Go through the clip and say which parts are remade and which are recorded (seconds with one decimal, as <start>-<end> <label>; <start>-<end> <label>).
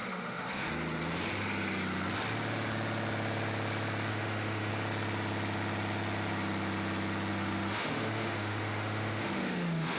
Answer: 0.0-0.7 remade; 0.7-4.1 recorded; 4.1-4.7 remade; 4.7-7.3 recorded; 7.3-10.0 remade